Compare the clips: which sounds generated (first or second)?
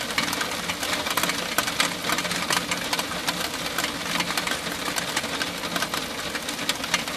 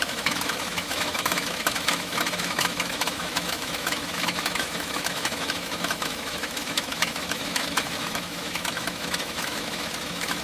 second